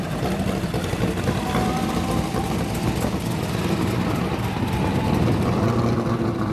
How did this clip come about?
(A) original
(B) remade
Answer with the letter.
A